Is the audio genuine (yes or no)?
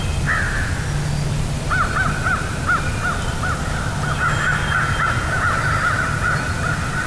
yes